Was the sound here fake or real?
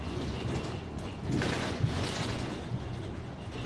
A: fake